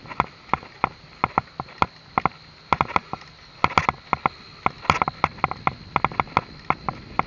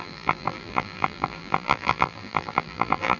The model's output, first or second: second